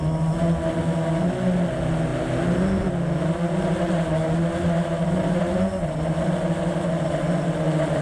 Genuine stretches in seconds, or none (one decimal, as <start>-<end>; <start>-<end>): 0.0-8.0